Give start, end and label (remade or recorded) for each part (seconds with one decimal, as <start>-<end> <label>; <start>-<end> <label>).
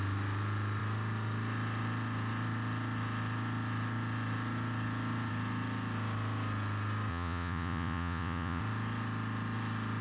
0.0-7.1 recorded; 7.1-8.6 remade; 8.6-10.0 recorded